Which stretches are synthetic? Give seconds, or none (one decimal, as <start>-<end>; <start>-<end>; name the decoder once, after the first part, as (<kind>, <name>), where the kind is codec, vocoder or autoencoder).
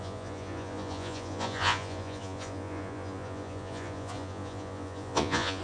0.0-5.6 (vocoder, Vocos)